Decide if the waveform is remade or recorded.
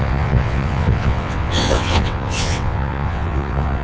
remade